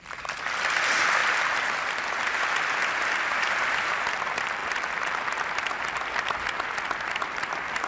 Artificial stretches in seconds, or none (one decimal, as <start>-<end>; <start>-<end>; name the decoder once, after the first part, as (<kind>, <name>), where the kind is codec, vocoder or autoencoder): none